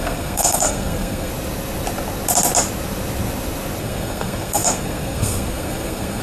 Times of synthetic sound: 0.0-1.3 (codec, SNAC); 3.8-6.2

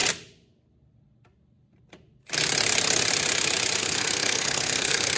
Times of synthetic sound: 3.8-5.2 (codec, SNAC)

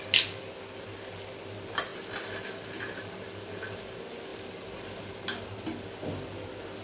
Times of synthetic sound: none